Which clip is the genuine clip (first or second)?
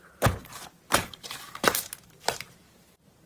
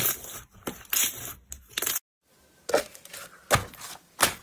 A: second